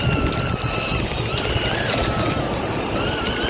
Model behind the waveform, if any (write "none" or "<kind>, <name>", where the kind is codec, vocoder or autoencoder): none